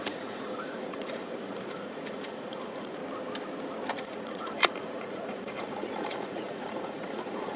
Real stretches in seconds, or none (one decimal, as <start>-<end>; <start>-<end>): 3.0-3.9